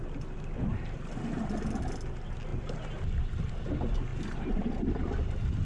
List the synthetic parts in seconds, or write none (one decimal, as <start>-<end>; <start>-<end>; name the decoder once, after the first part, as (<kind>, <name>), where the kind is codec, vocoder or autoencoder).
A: none